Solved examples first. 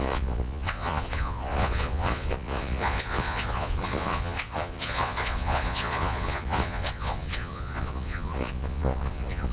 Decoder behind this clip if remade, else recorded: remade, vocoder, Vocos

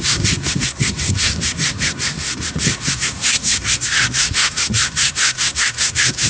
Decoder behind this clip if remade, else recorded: remade, codec, SNAC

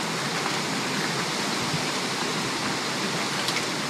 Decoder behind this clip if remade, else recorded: recorded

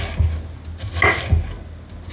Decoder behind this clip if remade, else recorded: recorded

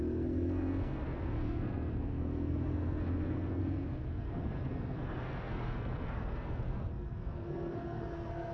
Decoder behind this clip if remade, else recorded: remade, codec, SNAC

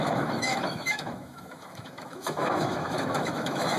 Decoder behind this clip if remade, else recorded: remade, autoencoder, DAC-VAE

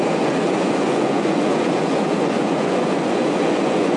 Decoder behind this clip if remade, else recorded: remade, vocoder, Vocos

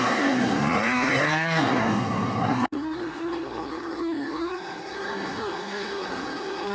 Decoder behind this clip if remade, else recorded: remade, codec, SNAC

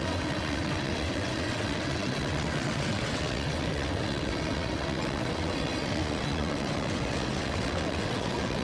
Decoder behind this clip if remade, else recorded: remade, vocoder, WaveNeXt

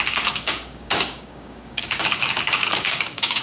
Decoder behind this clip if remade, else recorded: remade, codec, DAC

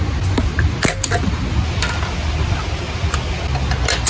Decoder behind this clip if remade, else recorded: recorded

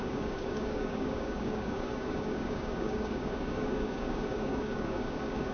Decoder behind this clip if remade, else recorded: remade, codec, DAC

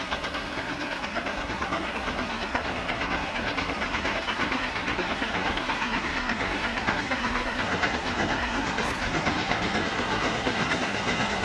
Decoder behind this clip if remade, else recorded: remade, codec, SNAC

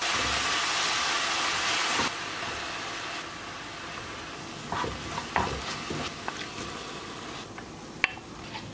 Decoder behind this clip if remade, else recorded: recorded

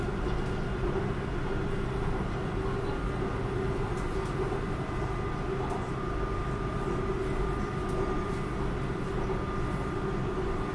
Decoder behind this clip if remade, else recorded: recorded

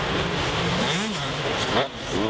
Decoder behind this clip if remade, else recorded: recorded